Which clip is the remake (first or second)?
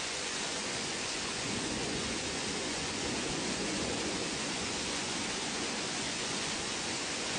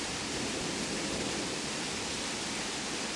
first